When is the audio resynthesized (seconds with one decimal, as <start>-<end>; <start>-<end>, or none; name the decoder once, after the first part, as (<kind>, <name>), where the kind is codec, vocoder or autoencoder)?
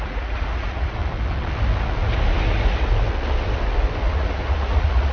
0.0-1.0 (vocoder, Vocos); 4.0-5.1